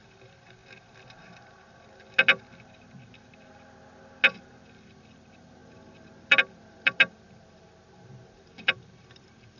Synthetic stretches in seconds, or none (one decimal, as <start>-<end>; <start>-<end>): 0.0-0.6; 4.4-5.6; 8.4-9.6